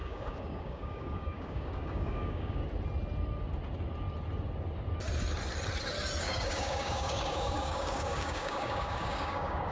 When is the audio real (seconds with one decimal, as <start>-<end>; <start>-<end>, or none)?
2.6-6.2